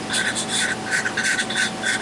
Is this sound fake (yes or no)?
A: no